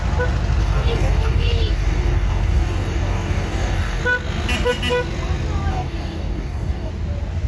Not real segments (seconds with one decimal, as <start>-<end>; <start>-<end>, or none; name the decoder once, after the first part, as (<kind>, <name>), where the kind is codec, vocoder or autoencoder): 0.6-4.0 (codec, DAC); 5.7-6.9